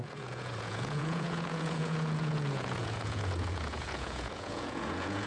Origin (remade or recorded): remade